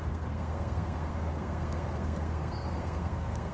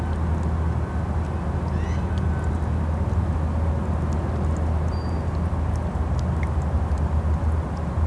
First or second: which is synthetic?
first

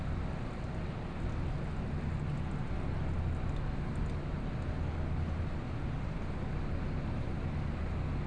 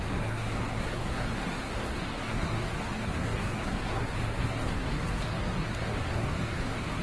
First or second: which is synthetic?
second